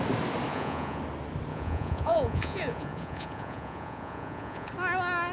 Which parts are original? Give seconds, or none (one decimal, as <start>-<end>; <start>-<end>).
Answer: 0.0-0.5; 1.0-1.5; 4.7-5.3